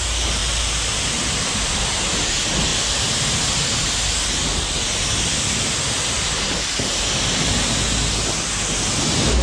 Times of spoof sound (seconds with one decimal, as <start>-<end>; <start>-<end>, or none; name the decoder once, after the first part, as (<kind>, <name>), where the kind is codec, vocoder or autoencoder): none